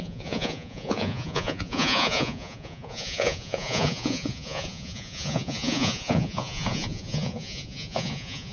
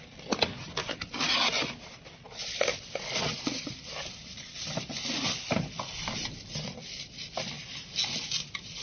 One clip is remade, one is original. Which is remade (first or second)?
first